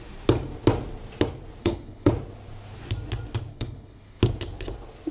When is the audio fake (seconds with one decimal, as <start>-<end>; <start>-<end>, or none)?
1.6-2.1; 3.5-4.2